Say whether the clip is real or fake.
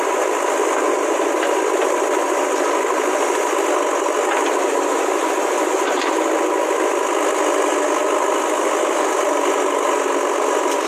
real